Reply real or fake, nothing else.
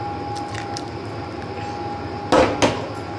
real